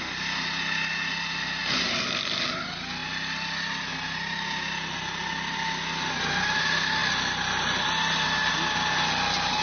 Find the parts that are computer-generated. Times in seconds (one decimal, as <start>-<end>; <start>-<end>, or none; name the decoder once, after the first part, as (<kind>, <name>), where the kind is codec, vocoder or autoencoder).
7.0-8.5 (vocoder, BigVGAN v2)